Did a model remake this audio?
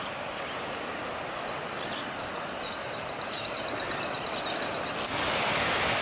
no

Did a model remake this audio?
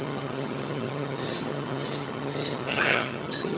yes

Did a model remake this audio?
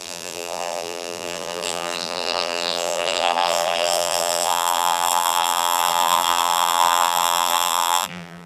yes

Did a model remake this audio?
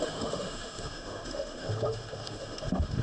yes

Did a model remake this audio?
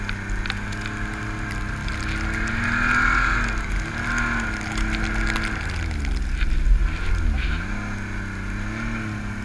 no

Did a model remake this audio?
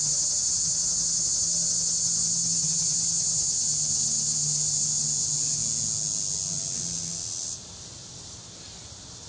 no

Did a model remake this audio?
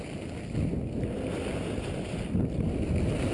no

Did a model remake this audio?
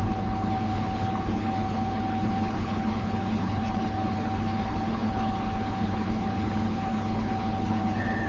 yes